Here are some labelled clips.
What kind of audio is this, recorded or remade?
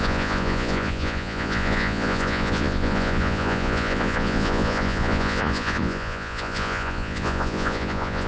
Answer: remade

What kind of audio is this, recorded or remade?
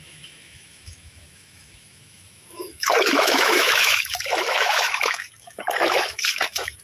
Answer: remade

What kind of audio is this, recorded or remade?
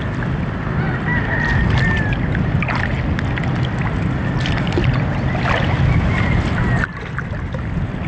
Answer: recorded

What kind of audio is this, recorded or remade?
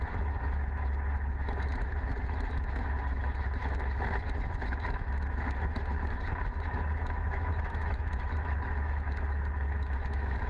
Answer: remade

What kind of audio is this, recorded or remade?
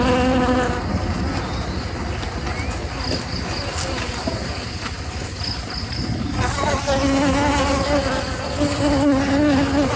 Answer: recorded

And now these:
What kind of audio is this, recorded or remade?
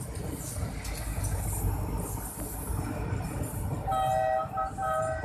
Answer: recorded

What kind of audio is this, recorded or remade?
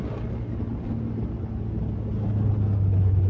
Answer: recorded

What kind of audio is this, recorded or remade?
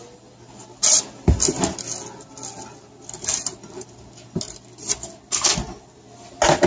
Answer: recorded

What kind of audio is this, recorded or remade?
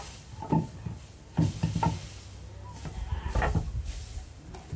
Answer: recorded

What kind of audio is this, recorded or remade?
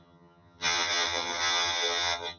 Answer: remade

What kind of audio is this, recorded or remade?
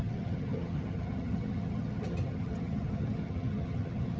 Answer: remade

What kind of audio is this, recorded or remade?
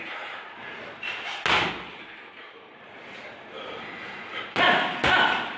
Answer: recorded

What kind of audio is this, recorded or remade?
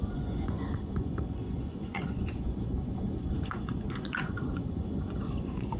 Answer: remade